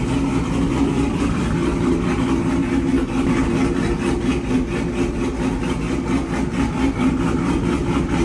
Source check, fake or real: real